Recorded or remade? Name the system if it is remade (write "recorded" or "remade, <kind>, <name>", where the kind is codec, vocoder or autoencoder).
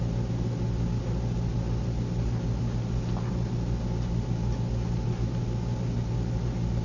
recorded